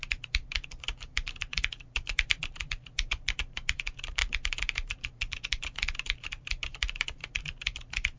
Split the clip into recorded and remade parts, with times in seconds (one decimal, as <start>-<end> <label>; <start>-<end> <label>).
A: 0.0-8.2 remade